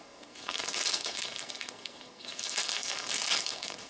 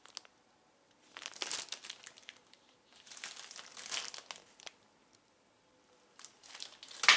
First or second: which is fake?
first